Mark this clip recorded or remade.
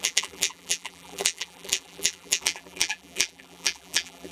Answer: remade